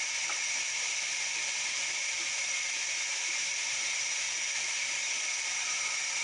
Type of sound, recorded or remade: remade